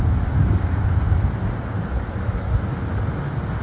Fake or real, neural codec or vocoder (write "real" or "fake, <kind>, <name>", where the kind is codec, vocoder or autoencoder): real